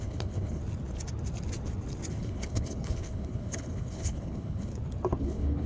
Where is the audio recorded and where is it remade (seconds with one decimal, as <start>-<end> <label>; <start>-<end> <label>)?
0.0-0.6 remade; 0.6-2.1 recorded; 2.1-4.7 remade; 4.7-5.2 recorded; 5.2-5.7 remade